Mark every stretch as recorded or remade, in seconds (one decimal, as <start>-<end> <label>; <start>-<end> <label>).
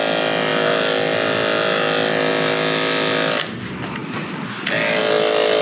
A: 0.0-5.6 recorded